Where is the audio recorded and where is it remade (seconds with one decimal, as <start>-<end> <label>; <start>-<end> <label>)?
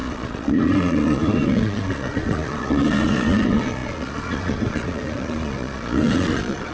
0.0-6.7 remade